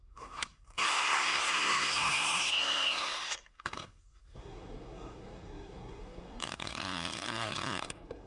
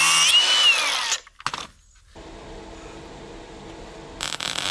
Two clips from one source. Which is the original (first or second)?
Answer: second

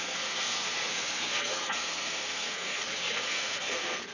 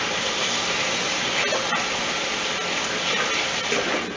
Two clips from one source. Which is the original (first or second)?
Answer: second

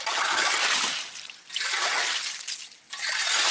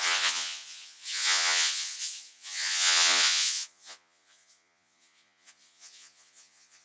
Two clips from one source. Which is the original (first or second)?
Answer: first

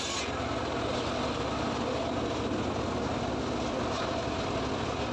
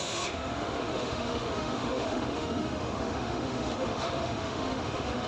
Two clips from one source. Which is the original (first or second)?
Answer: first